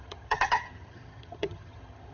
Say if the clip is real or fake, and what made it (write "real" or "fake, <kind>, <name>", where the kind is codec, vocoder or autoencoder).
fake, vocoder, HiFi-GAN